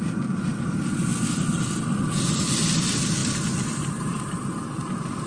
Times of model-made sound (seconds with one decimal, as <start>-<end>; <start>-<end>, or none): none